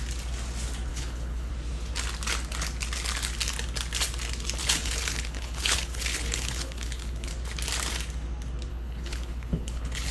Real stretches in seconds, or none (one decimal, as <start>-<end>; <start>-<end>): 0.0-0.9; 1.5-4.6; 7.3-8.7